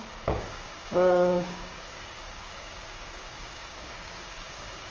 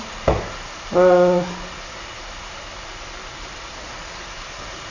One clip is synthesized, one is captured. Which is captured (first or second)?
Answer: second